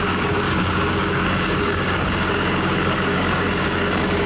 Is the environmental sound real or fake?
fake